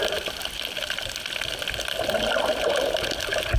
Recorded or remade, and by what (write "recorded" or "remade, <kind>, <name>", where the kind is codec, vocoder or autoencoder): recorded